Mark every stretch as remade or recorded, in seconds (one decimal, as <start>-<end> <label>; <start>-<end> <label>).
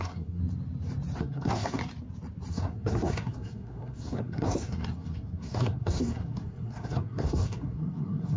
0.0-0.4 remade; 0.4-1.2 recorded; 1.2-1.8 remade; 1.8-2.5 recorded; 2.5-8.4 remade